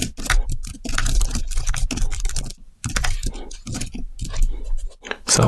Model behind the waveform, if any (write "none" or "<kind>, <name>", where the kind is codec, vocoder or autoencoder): none